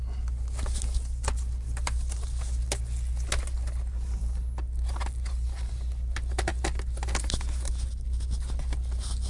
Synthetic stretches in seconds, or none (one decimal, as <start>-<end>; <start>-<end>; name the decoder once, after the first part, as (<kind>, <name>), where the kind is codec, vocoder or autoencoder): none